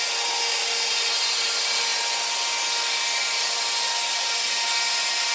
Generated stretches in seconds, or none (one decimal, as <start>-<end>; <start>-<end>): none